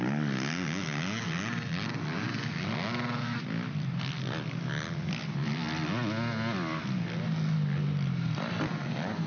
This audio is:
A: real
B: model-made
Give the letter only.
A